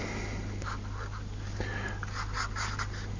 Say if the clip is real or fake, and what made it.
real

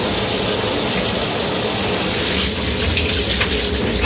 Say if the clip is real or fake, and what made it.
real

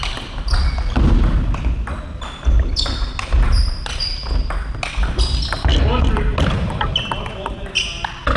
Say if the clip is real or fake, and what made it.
real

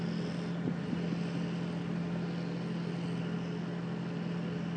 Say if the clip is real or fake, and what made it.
real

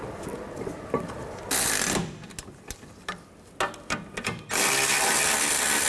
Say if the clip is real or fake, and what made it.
real